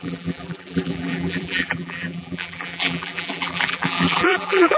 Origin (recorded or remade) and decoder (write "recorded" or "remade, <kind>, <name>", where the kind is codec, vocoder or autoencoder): remade, vocoder, BigVGAN v2